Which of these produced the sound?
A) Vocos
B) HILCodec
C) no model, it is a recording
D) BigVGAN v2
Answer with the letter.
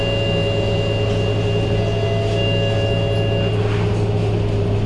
C